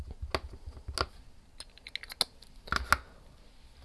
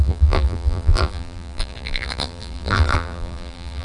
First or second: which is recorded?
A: first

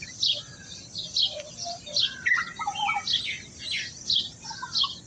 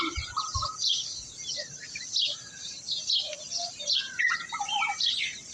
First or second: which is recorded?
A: first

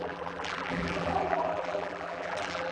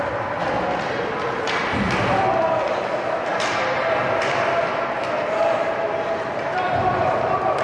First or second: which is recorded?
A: second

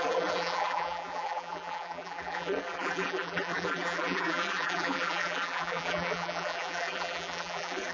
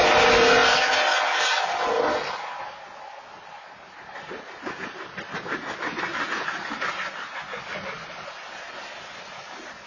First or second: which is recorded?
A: second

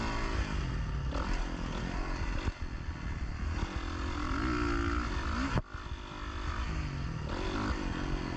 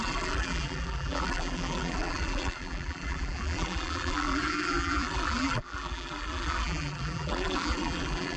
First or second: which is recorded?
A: first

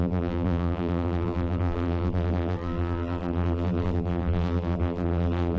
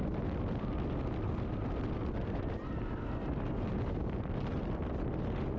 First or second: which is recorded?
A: second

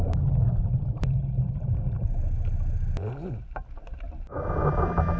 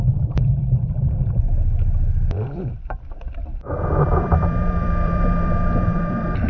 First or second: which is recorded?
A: first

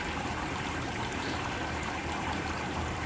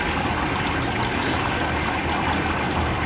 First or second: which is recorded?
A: second